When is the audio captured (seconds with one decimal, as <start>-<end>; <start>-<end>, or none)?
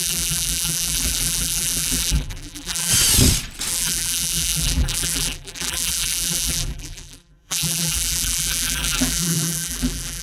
2.9-3.7